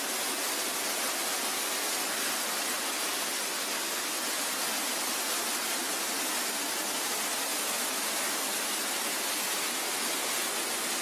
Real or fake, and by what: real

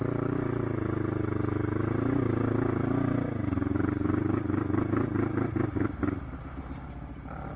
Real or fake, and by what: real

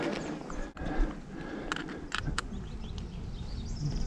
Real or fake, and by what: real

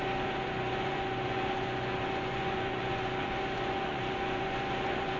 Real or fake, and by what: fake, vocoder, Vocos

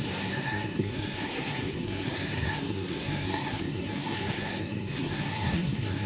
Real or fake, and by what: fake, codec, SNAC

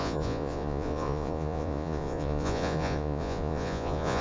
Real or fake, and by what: fake, vocoder, Vocos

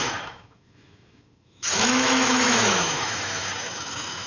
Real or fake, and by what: fake, autoencoder, DAC-VAE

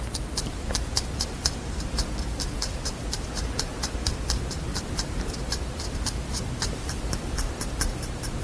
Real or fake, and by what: fake, vocoder, BigVGAN v2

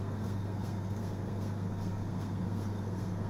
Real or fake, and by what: fake, codec, SNAC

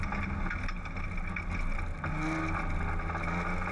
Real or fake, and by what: real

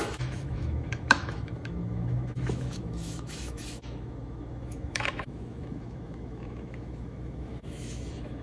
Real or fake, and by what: fake, autoencoder, DAC-VAE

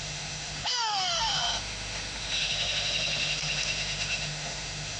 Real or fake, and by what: fake, autoencoder, DAC-VAE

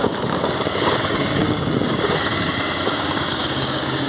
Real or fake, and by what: fake, codec, DAC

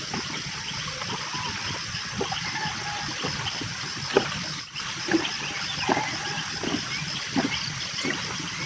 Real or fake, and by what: real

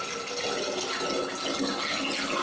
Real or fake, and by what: real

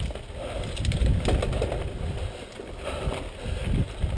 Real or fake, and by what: real